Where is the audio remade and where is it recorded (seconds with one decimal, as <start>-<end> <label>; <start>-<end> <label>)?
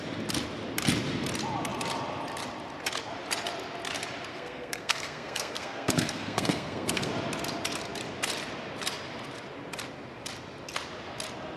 0.0-4.3 recorded; 4.3-7.1 remade; 7.1-11.6 recorded